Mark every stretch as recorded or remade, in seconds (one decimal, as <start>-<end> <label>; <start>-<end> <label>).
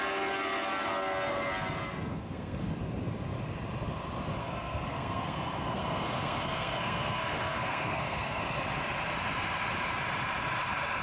0.0-2.1 recorded; 2.1-2.7 remade; 2.7-4.4 recorded; 4.4-8.4 remade; 8.4-11.0 recorded